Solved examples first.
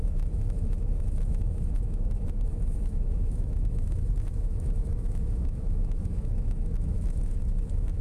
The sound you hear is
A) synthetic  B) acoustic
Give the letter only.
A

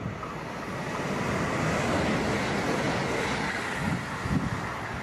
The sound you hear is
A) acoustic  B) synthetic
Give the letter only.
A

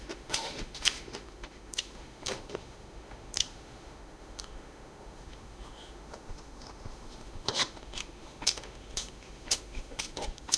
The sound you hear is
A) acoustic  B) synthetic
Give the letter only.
B